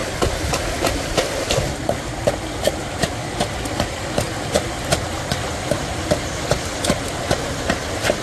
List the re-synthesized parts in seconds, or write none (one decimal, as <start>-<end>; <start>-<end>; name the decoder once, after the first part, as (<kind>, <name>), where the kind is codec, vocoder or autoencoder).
none